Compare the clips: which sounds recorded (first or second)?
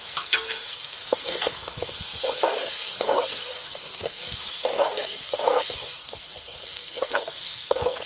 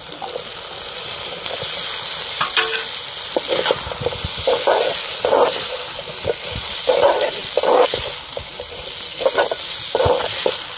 second